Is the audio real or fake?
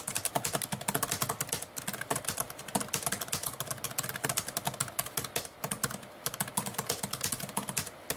real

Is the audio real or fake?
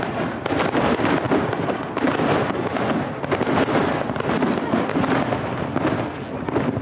real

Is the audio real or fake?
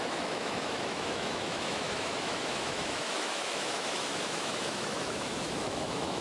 fake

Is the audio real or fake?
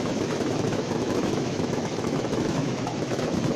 fake